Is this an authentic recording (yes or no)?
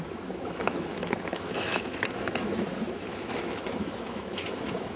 no